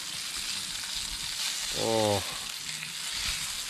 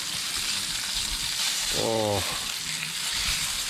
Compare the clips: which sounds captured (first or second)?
first